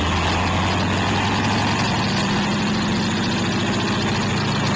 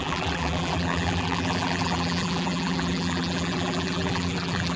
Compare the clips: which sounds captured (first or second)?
first